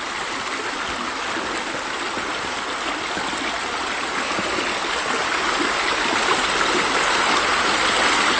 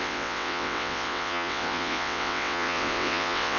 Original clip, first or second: first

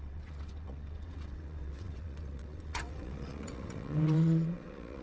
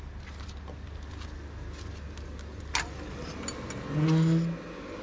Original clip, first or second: second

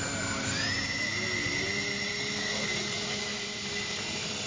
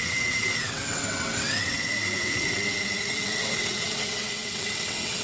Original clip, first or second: first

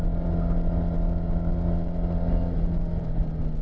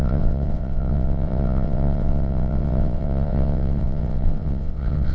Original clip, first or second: first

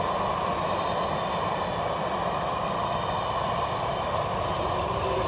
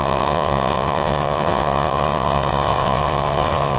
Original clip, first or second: first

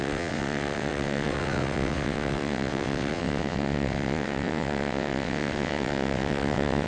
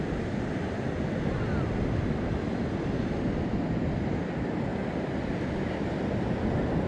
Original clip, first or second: second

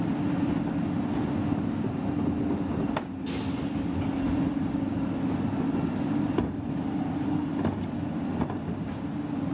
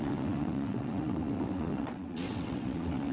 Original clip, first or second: first